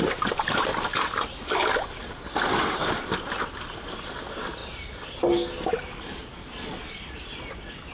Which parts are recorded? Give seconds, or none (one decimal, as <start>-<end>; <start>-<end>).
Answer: 0.0-7.9